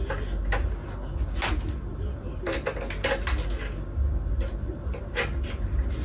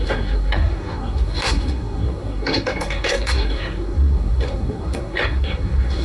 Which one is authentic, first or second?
first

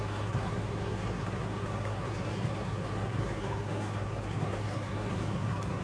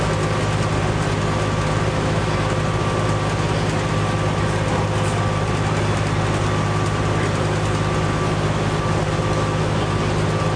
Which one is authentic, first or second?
second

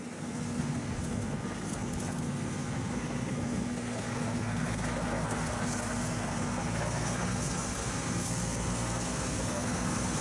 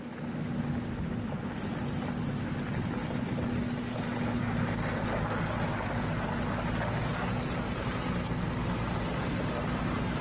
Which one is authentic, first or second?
second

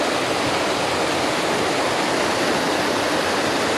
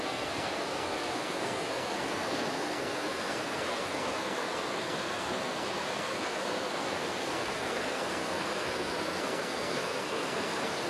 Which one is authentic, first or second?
first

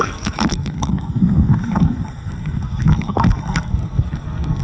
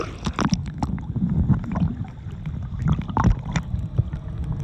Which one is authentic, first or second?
second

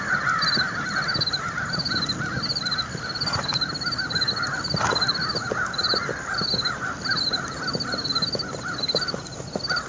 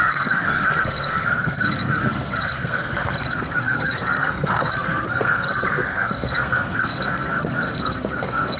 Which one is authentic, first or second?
first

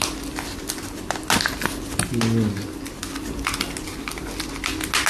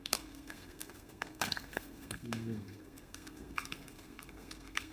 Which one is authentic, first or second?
first